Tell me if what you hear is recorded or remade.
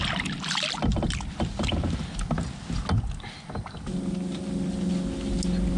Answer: recorded